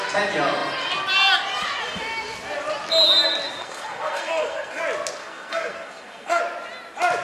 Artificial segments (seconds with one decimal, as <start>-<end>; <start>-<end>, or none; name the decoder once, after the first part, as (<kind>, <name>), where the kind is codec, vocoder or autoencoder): 3.6-4.8 (codec, SNAC); 5.2-6.4